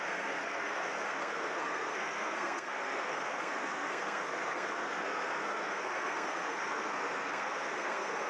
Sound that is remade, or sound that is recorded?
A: remade